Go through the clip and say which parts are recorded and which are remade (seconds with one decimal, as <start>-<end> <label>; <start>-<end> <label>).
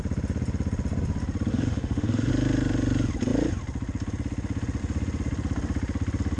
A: 0.0-1.5 recorded; 1.5-2.3 remade; 2.3-6.4 recorded